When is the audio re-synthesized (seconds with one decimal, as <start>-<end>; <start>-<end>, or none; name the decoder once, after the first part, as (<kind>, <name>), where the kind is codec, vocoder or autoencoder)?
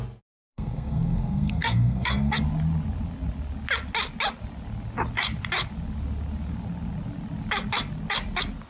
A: 0.4-2.4 (codec, SNAC)